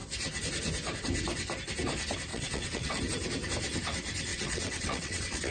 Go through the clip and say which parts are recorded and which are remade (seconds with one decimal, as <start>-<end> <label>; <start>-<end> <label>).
0.0-2.3 recorded; 2.3-3.0 remade; 3.0-4.3 recorded; 4.3-5.5 remade